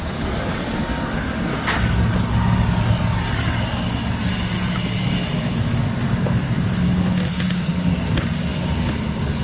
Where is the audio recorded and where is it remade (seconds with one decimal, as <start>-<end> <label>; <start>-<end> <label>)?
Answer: 0.0-9.4 recorded